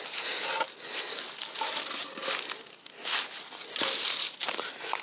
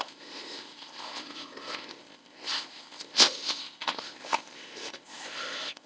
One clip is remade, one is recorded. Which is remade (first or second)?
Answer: second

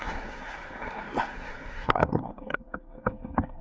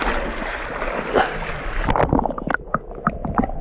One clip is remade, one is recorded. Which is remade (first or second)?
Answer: first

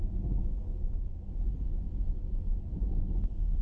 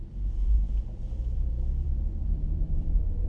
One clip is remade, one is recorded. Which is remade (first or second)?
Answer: second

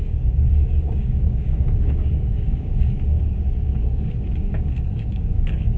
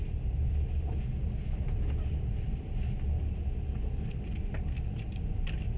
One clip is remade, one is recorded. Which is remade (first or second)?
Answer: first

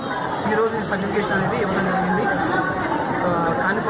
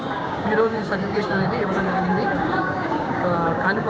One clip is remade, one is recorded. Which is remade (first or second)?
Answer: second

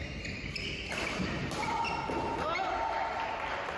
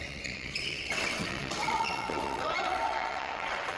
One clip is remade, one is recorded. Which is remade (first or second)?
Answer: second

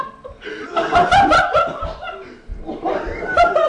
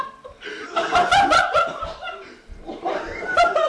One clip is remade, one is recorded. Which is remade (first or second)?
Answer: second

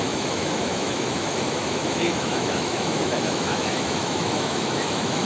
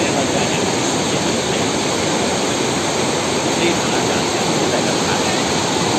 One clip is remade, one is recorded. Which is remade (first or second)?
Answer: first